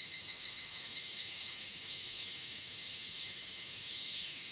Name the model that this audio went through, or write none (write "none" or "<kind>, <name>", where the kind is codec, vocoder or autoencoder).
autoencoder, DAC-VAE